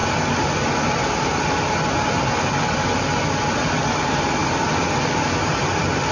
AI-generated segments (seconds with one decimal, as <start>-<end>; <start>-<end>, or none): none